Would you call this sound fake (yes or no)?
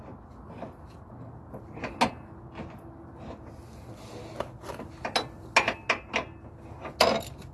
no